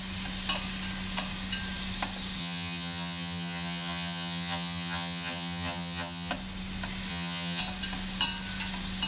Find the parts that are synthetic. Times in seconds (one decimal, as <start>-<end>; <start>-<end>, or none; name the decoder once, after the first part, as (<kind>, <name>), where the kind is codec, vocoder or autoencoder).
2.4-6.3 (vocoder, HiFi-GAN); 7.1-7.6